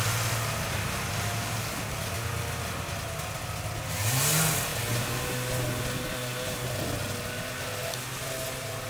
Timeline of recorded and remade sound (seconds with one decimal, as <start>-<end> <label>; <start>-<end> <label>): 0.0-8.9 recorded